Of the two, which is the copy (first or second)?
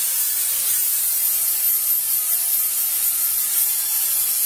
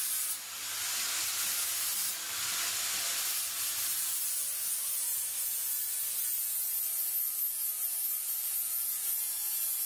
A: first